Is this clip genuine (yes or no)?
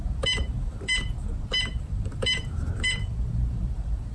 no